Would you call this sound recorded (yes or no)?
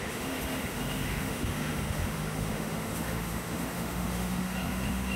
no